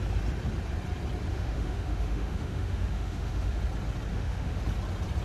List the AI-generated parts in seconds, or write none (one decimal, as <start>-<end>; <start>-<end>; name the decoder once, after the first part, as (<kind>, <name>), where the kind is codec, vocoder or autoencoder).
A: 1.3-3.6 (autoencoder, DAC-VAE); 4.1-4.6